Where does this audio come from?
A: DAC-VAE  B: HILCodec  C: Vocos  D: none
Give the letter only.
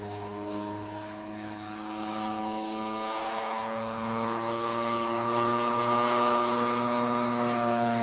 B